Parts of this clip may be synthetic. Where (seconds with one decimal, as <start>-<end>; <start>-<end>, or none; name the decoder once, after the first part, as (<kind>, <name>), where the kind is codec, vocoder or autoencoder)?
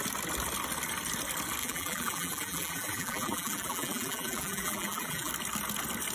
1.6-5.3 (vocoder, BigVGAN v2)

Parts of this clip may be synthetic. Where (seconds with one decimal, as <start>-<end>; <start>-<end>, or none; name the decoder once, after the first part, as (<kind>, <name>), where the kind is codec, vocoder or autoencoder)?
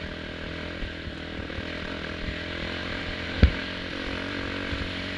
2.8-3.6 (vocoder, BigVGAN v2)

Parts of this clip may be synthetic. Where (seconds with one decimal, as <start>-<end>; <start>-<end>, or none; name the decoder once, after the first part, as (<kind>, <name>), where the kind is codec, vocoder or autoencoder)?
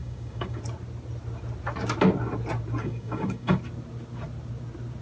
0.0-0.6 (codec, DAC); 2.8-3.6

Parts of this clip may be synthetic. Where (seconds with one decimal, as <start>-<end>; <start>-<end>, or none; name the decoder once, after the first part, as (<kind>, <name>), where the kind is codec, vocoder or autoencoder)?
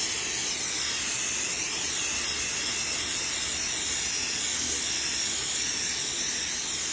none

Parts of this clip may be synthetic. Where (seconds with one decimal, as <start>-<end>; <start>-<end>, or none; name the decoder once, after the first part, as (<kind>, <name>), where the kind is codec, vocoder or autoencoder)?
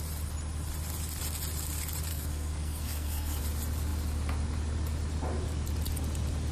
2.1-3.4 (codec, SNAC)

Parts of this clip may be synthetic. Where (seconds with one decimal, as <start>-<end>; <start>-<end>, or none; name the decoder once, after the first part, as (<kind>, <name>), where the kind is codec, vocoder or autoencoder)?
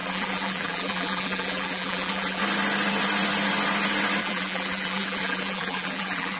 0.0-2.4 (vocoder, BigVGAN v2); 4.2-6.4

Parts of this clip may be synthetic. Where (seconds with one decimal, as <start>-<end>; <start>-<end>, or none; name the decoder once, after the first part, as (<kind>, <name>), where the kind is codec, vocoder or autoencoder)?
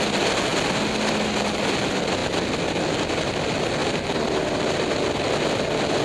none